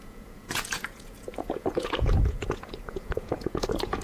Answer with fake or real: fake